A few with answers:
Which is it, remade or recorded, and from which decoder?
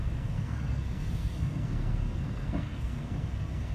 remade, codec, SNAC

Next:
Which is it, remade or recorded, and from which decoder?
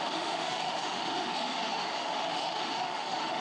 remade, autoencoder, DAC-VAE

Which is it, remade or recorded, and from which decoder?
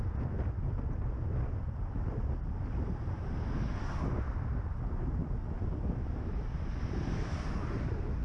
recorded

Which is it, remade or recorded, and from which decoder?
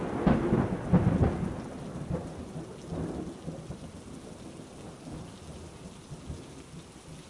recorded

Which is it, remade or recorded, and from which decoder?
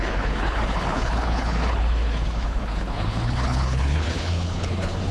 remade, codec, HILCodec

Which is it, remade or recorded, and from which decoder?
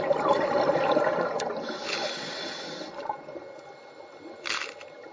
recorded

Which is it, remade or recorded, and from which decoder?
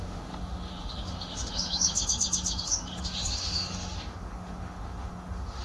remade, autoencoder, DAC-VAE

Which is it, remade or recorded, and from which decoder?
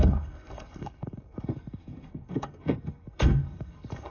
remade, codec, SNAC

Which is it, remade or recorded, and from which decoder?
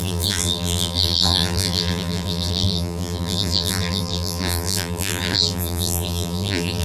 remade, vocoder, BigVGAN v2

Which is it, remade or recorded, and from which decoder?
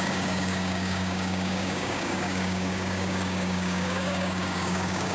remade, codec, DAC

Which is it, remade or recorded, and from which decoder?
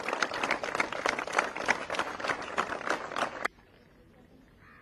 recorded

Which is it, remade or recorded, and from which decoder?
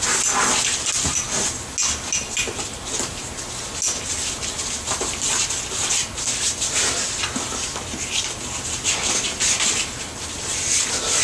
recorded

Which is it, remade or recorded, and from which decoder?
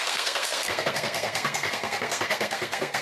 remade, codec, SNAC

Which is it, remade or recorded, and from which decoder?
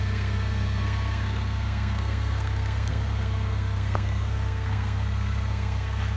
remade, codec, SNAC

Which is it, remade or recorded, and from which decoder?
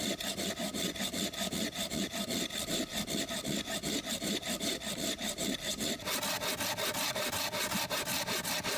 recorded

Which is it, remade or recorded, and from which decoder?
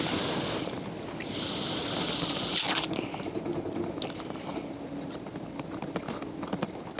recorded